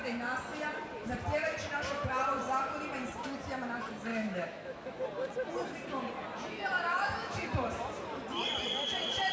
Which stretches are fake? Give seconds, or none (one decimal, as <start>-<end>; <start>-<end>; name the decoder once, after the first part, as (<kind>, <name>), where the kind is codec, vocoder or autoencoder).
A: 4.1-5.0 (autoencoder, DAC-VAE); 6.9-7.5